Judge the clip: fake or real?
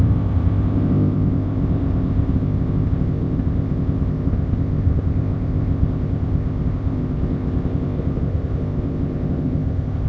fake